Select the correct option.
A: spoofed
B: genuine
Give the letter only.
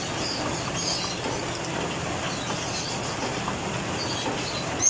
B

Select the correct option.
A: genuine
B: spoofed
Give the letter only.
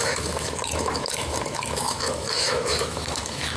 B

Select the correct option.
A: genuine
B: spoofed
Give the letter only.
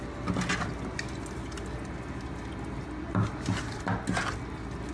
A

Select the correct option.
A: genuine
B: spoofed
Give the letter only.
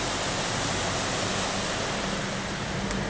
A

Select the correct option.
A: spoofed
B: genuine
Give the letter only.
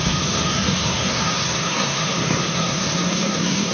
A